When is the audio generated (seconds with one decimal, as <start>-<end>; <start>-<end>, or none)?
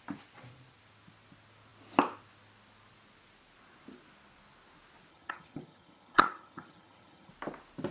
5.1-7.3